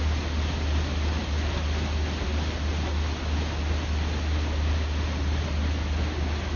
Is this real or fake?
real